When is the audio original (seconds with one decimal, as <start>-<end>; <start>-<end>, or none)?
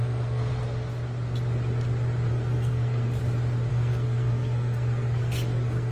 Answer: 0.5-2.3; 3.2-3.7